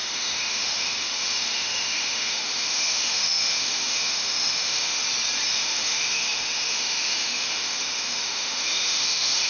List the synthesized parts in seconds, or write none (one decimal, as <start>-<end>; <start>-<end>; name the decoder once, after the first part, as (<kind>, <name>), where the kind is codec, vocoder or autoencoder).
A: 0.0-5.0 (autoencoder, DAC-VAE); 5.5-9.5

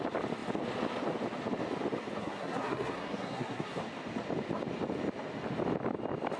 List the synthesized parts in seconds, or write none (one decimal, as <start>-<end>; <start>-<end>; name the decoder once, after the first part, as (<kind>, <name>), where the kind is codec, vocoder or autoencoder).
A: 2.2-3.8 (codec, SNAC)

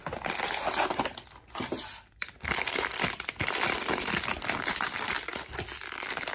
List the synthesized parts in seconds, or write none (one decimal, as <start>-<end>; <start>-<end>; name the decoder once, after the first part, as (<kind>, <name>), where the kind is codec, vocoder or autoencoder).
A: 3.1-5.3 (vocoder, BigVGAN v2)

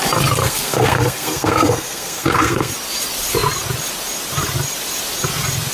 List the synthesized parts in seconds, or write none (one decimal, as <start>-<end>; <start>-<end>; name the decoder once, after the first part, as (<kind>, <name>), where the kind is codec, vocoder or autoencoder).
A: 0.4-2.7 (codec, SNAC)

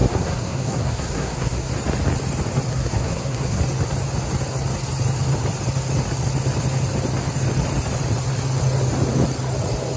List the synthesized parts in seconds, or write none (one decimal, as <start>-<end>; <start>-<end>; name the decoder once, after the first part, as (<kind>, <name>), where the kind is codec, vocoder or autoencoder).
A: 0.0-1.7 (codec, SNAC); 2.7-3.6

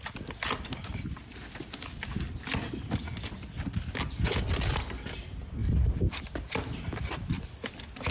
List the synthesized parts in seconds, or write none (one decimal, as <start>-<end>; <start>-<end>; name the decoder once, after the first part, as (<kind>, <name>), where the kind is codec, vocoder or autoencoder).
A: none

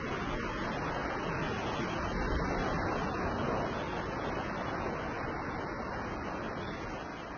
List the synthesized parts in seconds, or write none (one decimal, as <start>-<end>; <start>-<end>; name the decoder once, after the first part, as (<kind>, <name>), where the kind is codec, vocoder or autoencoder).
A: none

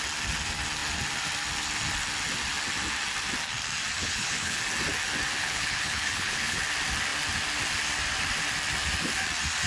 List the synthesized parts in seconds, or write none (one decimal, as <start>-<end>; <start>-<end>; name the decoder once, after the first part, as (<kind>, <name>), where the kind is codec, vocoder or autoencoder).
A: 4.0-4.6 (codec, HILCodec); 5.4-6.6